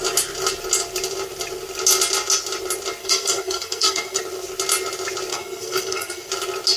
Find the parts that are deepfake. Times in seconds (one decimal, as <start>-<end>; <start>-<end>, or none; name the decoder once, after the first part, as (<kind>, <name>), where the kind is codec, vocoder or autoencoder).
3.0-4.2 (codec, SNAC); 5.3-6.3